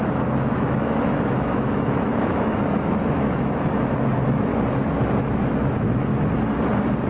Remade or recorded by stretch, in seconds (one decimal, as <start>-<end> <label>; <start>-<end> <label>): 0.0-4.5 remade; 4.5-5.2 recorded; 5.2-6.1 remade; 6.1-7.1 recorded